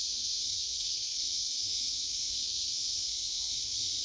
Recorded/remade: remade